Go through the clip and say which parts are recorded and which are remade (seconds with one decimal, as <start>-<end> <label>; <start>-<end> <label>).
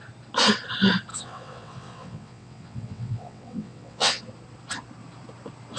0.0-1.1 recorded; 1.1-4.2 remade; 4.2-5.8 recorded